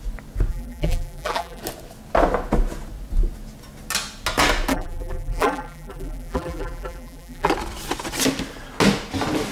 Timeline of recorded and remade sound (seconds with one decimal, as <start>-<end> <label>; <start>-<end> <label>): 0.0-0.5 recorded; 0.5-1.6 remade; 1.6-4.7 recorded; 4.7-7.5 remade; 7.5-9.5 recorded